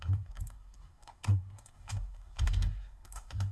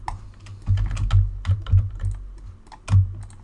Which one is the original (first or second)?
second